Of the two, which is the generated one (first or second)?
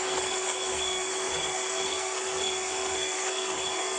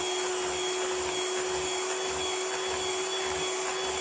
first